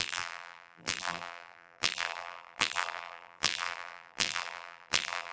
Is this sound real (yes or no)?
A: no